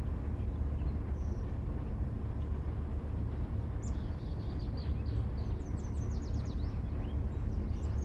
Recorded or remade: recorded